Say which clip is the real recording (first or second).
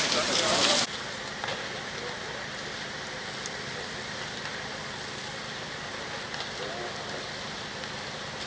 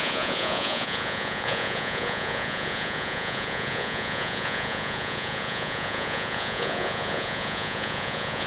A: first